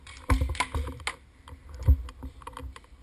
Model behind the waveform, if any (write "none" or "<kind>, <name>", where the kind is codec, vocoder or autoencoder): none